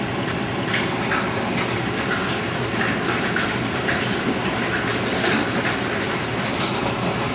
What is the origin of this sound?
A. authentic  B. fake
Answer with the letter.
A